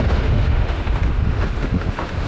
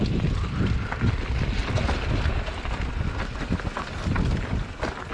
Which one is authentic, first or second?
second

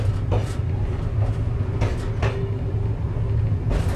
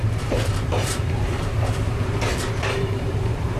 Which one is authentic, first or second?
first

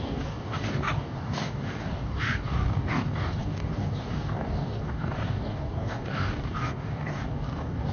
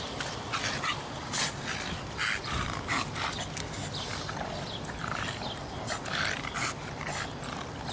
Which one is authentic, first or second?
second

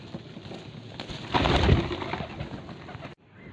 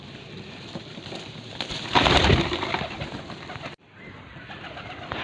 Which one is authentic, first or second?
first